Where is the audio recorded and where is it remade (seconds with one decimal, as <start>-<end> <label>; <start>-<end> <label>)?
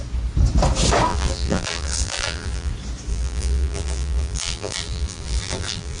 0.0-1.1 recorded; 1.1-2.7 remade; 2.7-3.1 recorded; 3.1-6.0 remade